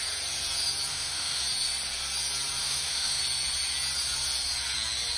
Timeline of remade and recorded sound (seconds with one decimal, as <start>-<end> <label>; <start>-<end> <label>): 0.0-0.9 recorded; 0.9-1.4 remade; 1.4-2.6 recorded; 2.6-3.2 remade; 3.2-5.2 recorded